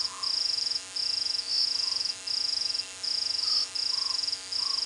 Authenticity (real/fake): real